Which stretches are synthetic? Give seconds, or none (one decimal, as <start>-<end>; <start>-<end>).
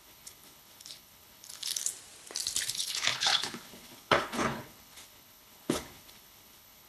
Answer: 0.0-1.7; 2.7-6.9